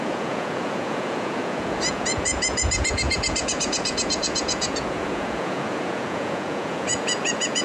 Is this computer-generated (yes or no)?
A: yes